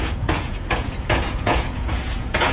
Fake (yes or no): yes